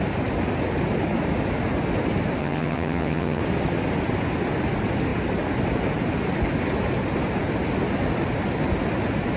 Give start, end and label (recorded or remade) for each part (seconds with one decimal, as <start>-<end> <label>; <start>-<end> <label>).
0.0-2.4 recorded; 2.4-3.4 remade; 3.4-9.4 recorded